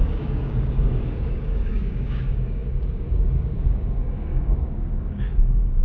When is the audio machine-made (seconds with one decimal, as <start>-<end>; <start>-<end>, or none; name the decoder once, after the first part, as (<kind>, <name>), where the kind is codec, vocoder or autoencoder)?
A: 0.0-5.8 (codec, DAC)